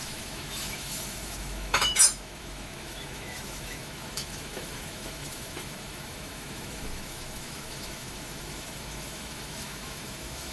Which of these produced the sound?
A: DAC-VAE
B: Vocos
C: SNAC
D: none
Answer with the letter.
A